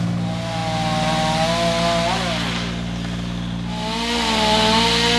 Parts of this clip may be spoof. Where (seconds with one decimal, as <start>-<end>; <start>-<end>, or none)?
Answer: none